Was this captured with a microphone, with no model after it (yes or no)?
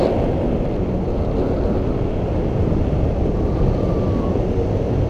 yes